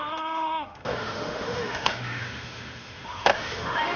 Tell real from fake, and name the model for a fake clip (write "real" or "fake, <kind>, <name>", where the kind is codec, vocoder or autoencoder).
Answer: fake, autoencoder, DAC-VAE